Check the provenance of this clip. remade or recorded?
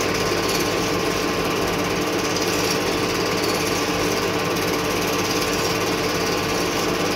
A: recorded